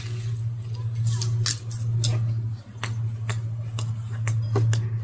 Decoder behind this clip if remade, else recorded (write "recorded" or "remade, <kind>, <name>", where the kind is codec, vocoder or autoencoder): recorded